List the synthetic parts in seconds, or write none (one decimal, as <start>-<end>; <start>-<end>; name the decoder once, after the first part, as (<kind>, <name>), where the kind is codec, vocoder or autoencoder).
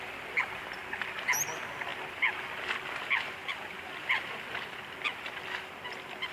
none